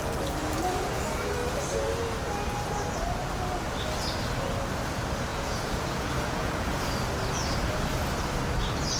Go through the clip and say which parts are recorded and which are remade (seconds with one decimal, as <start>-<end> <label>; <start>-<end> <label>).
0.0-5.3 recorded; 5.3-6.9 remade; 6.9-9.0 recorded